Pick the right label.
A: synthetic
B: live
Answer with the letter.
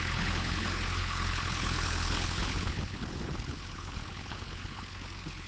A